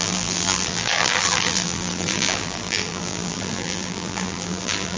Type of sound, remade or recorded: remade